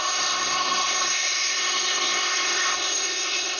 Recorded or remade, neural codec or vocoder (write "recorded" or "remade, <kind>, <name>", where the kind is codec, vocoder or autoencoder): remade, codec, SNAC